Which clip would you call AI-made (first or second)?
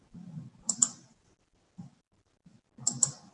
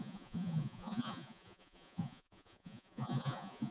second